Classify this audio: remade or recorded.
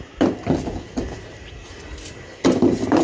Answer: recorded